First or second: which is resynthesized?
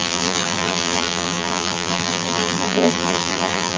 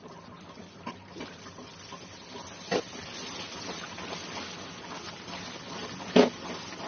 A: first